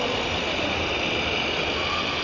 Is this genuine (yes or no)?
yes